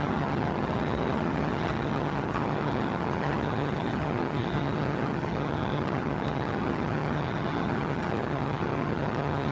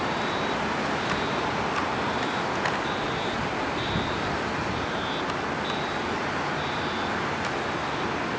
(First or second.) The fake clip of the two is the first